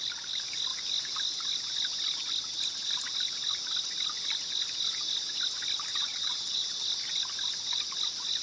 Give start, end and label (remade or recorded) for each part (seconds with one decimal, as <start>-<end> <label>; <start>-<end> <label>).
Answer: 0.0-5.9 recorded; 5.9-6.8 remade; 6.8-8.4 recorded